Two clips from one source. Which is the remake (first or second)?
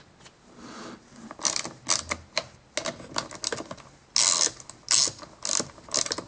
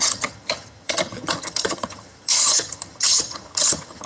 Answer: second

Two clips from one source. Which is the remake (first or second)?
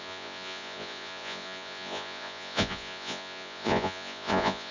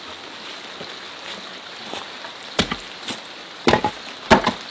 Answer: first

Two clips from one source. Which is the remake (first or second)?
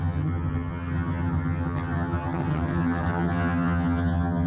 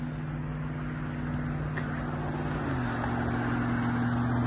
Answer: first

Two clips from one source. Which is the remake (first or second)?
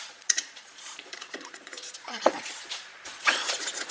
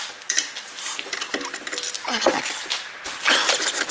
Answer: first